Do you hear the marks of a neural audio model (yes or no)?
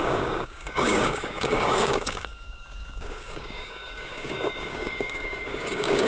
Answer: yes